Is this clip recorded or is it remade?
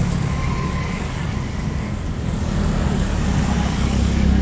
remade